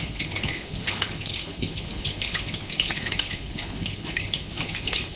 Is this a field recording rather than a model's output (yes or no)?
no